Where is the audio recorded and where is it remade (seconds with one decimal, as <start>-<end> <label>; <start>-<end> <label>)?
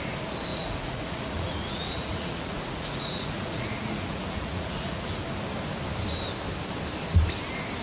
0.0-0.5 recorded; 0.5-5.2 remade; 5.2-7.8 recorded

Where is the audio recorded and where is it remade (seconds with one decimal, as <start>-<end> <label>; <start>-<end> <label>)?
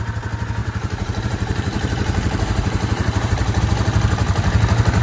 0.0-0.6 recorded; 0.6-3.6 remade; 3.6-5.0 recorded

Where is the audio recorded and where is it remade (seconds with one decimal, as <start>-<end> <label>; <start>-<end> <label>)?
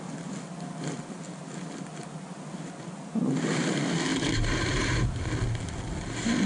0.0-4.1 recorded; 4.1-5.2 remade; 5.2-6.5 recorded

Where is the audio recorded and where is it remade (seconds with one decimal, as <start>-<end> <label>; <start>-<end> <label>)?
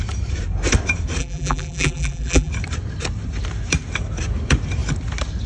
0.0-1.2 recorded; 1.2-2.5 remade; 2.5-5.5 recorded